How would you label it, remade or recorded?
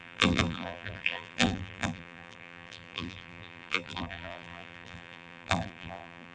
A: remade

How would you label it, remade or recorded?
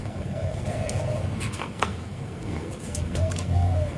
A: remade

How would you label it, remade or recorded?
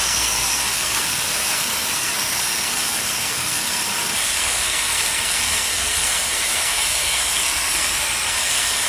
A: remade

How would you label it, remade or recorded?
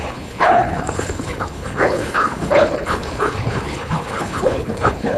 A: remade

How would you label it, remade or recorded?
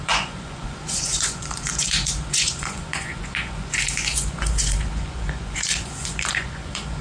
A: remade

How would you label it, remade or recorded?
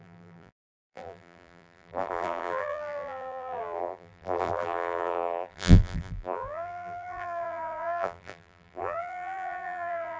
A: remade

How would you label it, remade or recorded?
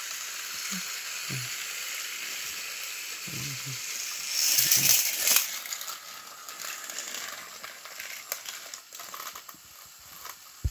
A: recorded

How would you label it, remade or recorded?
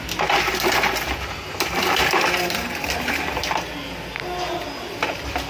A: recorded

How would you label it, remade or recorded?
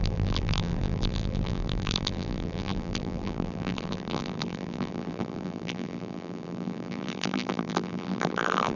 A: remade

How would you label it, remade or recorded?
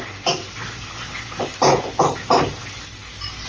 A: recorded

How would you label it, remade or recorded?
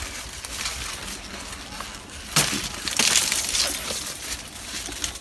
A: recorded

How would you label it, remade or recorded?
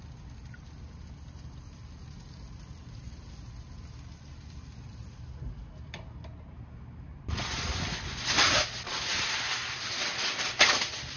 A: recorded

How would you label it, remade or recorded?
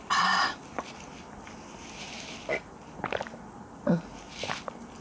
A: remade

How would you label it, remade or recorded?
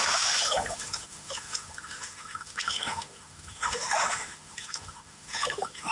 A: remade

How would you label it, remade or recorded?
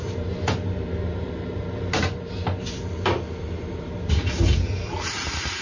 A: remade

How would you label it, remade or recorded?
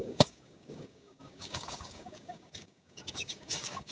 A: remade